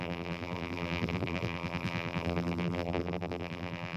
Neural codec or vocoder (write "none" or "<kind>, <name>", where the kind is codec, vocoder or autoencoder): vocoder, BigVGAN v2